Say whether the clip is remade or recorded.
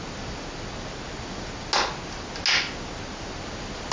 recorded